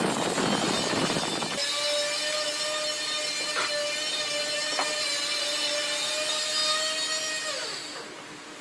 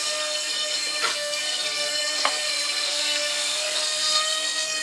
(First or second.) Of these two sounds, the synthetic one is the second